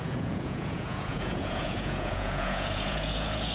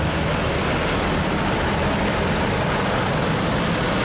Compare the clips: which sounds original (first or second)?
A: second